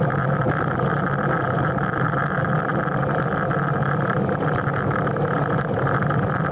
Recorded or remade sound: recorded